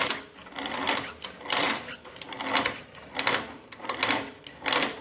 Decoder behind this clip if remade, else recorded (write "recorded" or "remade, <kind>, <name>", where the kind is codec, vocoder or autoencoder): remade, vocoder, BigVGAN v2